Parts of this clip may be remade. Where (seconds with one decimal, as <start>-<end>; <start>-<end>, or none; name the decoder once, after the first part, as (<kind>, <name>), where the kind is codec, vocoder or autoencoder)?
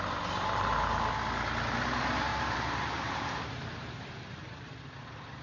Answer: 2.3-4.8 (vocoder, BigVGAN v2)